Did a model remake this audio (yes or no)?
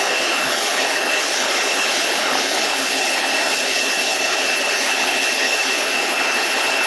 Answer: yes